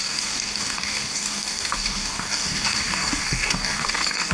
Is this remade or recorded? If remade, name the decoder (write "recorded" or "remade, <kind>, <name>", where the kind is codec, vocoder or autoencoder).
remade, codec, DAC